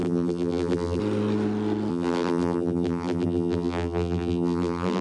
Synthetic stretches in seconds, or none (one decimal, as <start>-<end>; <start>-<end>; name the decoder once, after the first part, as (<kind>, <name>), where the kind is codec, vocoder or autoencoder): 0.0-1.0 (vocoder, BigVGAN v2); 1.9-5.0